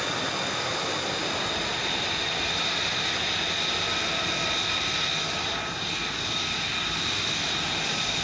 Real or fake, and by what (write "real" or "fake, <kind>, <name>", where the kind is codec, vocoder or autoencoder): real